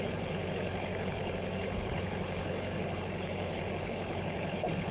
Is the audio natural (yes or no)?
no